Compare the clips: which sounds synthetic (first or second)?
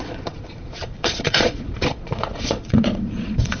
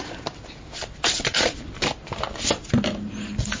first